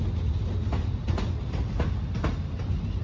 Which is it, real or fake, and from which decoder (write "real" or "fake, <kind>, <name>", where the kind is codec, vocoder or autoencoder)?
real